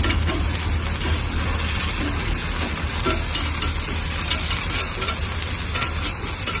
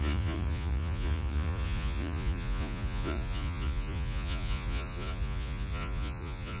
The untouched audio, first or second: first